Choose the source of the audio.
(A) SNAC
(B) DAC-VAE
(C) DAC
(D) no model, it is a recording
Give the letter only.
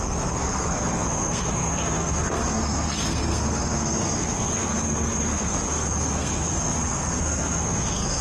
A